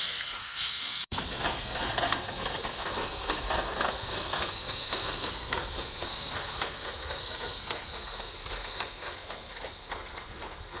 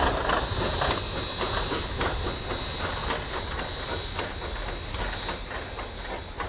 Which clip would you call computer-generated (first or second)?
first